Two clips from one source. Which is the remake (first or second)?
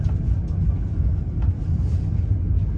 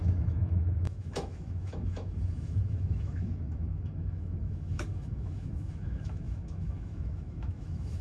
second